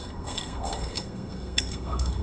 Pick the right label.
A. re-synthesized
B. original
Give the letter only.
A